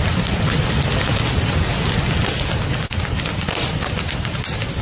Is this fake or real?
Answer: real